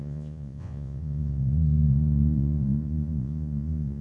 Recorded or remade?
remade